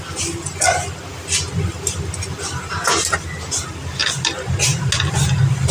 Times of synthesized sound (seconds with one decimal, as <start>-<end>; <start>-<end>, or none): none